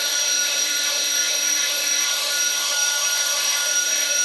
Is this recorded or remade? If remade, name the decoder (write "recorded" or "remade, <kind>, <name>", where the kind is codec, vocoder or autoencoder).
remade, autoencoder, DAC-VAE